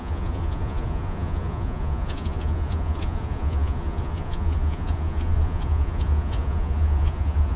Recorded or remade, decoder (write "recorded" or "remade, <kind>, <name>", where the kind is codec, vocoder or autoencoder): remade, vocoder, Vocos